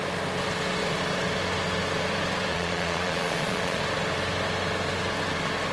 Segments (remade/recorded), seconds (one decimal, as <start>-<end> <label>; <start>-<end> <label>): 0.0-2.5 recorded; 2.5-3.8 remade; 3.8-5.7 recorded